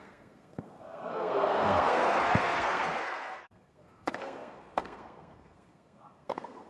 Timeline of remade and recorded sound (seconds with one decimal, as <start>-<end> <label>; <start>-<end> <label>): 0.0-6.7 remade